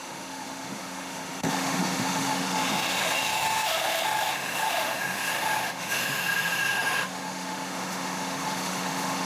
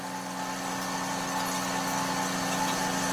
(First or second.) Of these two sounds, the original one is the second